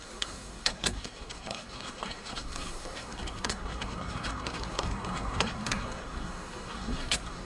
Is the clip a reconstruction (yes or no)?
yes